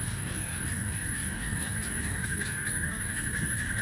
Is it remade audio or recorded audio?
remade